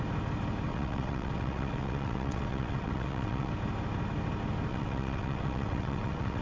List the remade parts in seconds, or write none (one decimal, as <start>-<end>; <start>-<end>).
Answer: 0.7-3.5; 4.7-6.4